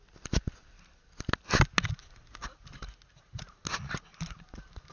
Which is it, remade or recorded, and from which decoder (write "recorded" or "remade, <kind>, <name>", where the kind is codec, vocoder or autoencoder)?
recorded